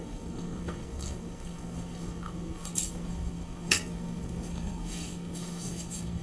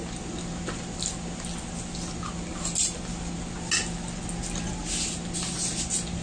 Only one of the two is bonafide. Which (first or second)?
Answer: second